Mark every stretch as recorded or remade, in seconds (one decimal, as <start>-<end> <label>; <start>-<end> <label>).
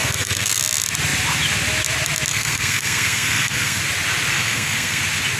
0.0-0.6 remade; 0.6-2.3 recorded; 2.3-3.8 remade; 3.8-4.3 recorded; 4.3-5.0 remade; 5.0-5.4 recorded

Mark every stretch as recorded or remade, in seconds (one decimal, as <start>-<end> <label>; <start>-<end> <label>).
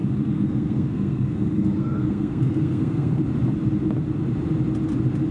0.0-3.2 remade; 3.2-5.3 recorded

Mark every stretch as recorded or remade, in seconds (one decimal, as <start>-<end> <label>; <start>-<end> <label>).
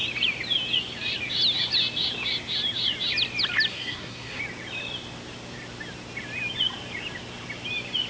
0.0-3.7 recorded; 3.7-4.4 remade; 4.4-8.1 recorded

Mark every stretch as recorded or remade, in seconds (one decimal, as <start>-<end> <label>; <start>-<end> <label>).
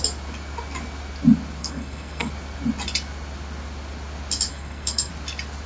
0.0-1.6 recorded; 1.6-2.3 remade; 2.3-4.5 recorded; 4.5-5.1 remade; 5.1-5.7 recorded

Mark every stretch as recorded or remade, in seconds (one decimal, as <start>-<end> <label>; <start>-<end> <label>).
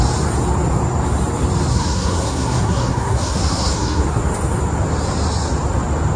0.0-1.7 recorded; 1.7-4.2 remade; 4.2-6.2 recorded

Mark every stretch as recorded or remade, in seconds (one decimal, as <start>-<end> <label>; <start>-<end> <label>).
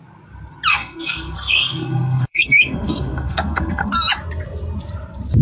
0.0-0.7 recorded; 0.7-3.9 remade; 3.9-5.4 recorded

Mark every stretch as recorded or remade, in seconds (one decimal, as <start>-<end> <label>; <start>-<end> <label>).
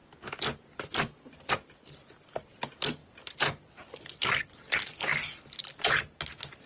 0.0-6.7 recorded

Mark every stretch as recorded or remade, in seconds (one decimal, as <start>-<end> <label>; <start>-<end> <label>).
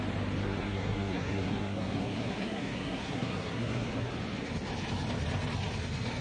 0.0-0.4 recorded; 0.4-4.1 remade; 4.1-6.2 recorded